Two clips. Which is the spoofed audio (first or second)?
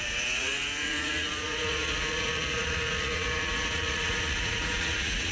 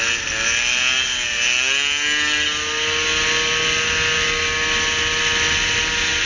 first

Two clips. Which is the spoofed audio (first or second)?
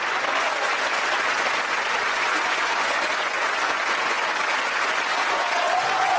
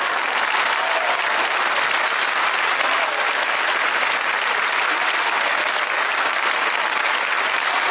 first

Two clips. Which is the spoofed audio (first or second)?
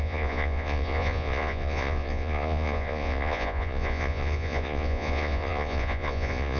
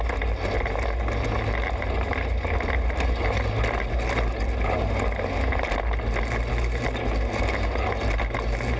first